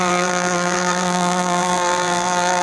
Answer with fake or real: fake